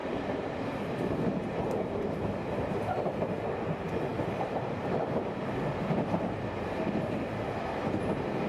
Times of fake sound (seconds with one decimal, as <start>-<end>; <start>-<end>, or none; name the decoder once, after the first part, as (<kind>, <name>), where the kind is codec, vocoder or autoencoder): 0.0-3.4 (vocoder, BigVGAN v2); 4.1-6.4